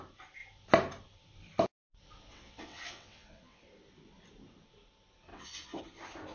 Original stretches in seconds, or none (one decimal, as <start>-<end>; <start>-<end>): 0.0-2.3; 3.6-5.3; 5.8-6.3